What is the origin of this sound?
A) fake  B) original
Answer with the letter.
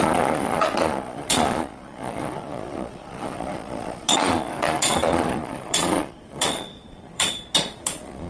A